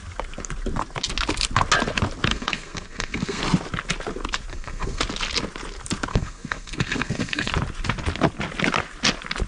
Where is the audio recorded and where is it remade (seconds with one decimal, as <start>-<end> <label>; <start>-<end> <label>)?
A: 0.0-2.3 recorded; 2.3-3.4 remade; 3.4-4.5 recorded; 4.5-5.0 remade; 5.0-6.1 recorded; 6.1-7.5 remade; 7.5-9.5 recorded